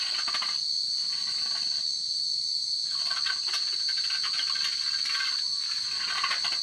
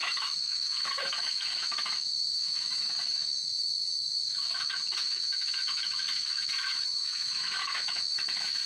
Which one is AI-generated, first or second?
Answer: second